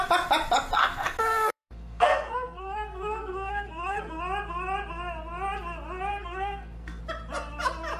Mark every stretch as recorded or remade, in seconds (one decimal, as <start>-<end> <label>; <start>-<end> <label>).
0.0-0.8 recorded; 0.8-4.2 remade; 4.2-6.1 recorded; 6.1-7.0 remade; 7.0-8.0 recorded

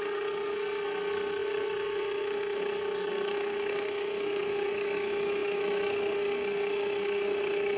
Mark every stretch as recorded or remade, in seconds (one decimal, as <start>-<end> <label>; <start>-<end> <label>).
0.0-7.8 remade

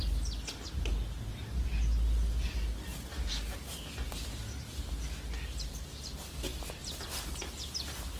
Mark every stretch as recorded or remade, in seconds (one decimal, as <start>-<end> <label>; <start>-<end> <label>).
0.0-8.2 recorded

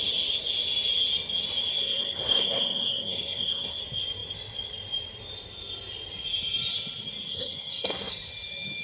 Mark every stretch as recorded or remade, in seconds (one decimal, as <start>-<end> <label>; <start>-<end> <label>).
0.0-1.7 recorded; 1.7-3.8 remade; 3.8-7.3 recorded; 7.3-8.1 remade; 8.1-8.8 recorded

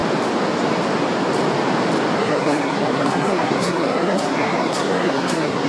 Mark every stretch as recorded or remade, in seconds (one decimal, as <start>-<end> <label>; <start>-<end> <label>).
0.0-2.2 recorded; 2.2-5.7 remade